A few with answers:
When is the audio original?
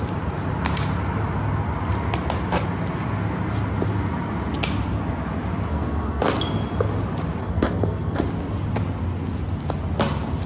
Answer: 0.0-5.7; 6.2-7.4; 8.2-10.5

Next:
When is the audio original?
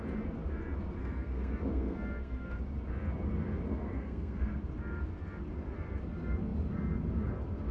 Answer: 0.0-1.0; 2.6-3.7; 4.6-7.7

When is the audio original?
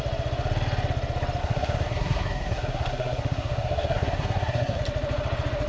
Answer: 0.0-1.4; 4.8-5.7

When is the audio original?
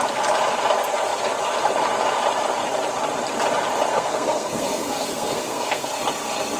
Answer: 0.0-3.9; 6.0-6.6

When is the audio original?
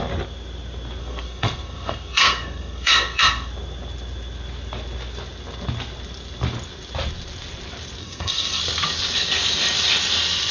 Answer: 0.0-1.0; 3.5-8.0; 8.6-10.5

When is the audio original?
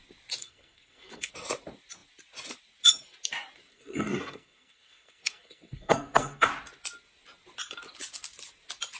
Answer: 0.0-0.4; 1.3-3.7; 6.5-9.0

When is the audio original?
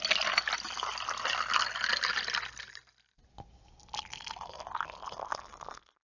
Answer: 0.0-6.0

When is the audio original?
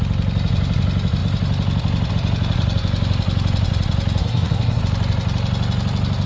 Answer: 0.0-4.2; 4.8-6.3